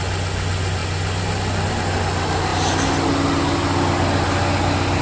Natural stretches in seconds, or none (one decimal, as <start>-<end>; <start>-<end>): 0.0-5.0